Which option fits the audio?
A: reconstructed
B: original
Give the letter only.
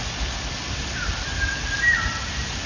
B